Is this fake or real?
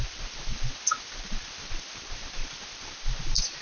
real